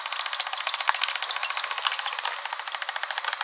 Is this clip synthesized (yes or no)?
no